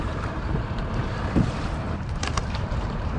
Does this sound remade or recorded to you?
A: remade